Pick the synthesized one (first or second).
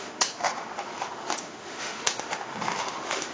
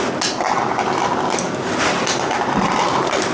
first